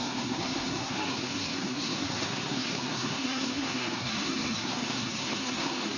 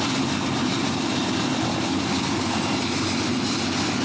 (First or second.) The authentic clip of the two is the second